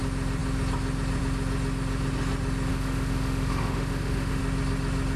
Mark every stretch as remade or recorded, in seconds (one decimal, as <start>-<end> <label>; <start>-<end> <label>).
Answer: 0.0-2.7 recorded; 2.7-4.4 remade; 4.4-5.2 recorded